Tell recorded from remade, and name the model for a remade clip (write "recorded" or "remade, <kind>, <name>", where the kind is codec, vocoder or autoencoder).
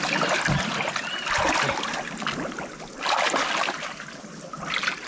recorded